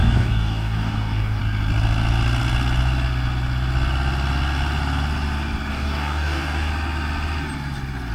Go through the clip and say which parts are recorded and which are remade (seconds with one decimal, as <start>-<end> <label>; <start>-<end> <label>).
0.0-1.4 remade; 1.4-5.7 recorded; 5.7-6.7 remade; 6.7-8.1 recorded